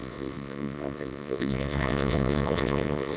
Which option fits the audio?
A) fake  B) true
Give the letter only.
A